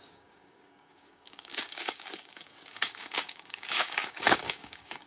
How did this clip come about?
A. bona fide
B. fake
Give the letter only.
B